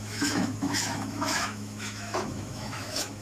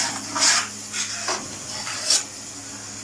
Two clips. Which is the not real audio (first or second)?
first